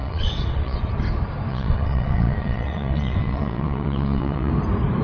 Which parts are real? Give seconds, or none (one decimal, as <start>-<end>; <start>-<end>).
0.8-1.5; 4.5-5.0